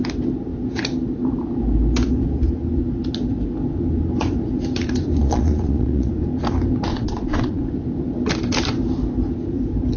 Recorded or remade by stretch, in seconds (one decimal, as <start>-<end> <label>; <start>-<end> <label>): 0.0-5.2 recorded; 5.2-6.1 remade; 6.1-6.9 recorded; 6.9-7.6 remade; 7.6-10.0 recorded